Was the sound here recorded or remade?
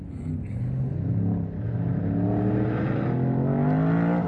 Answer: recorded